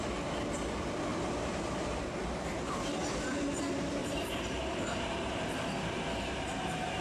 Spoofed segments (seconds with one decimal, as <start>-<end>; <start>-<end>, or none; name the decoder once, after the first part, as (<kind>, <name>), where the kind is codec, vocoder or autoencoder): 1.1-2.9 (vocoder, BigVGAN v2); 4.0-6.2